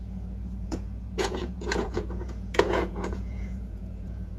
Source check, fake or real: fake